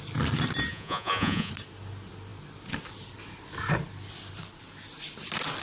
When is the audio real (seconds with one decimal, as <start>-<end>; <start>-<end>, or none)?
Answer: 0.0-0.7; 1.5-5.6